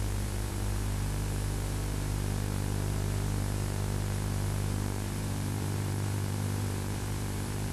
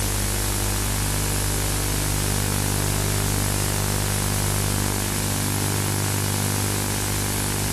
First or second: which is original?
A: second